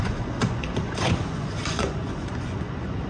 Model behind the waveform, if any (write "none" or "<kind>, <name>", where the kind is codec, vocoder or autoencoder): vocoder, Vocos